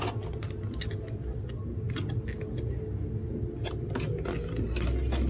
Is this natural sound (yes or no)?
yes